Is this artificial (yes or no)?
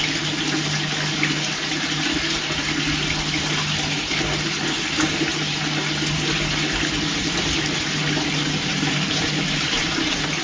no